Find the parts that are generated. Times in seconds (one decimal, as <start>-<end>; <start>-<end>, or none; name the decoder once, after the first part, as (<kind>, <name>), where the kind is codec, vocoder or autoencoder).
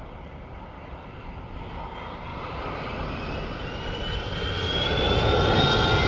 none